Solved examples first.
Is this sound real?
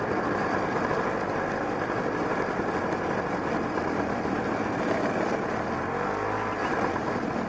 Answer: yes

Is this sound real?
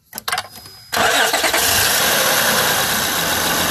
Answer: yes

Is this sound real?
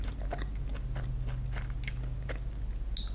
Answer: yes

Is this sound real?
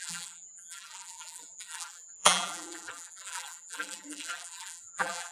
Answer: no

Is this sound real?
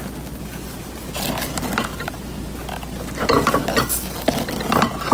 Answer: yes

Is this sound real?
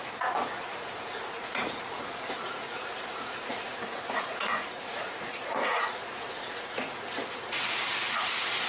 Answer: no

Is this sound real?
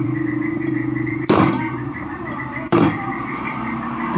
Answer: no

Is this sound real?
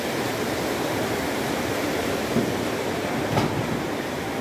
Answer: yes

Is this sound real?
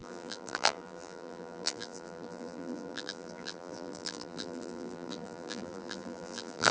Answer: no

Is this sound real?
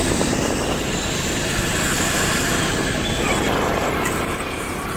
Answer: yes